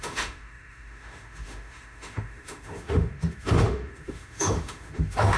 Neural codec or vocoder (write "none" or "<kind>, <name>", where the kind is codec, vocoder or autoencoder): autoencoder, DAC-VAE